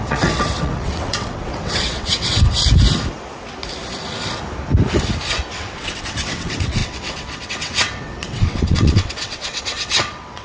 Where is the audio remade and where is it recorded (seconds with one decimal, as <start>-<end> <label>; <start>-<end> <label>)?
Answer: 0.0-2.6 remade; 2.6-5.5 recorded; 5.5-10.4 remade